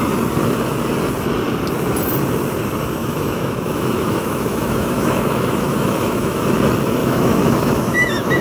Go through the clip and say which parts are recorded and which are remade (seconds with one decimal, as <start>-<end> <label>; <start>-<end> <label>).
0.0-3.0 recorded; 3.0-6.5 remade; 6.5-7.0 recorded; 7.0-8.4 remade